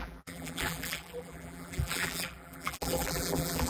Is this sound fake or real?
fake